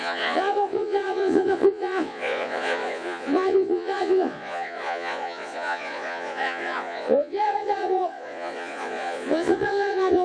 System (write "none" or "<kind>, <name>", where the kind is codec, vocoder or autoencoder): vocoder, Vocos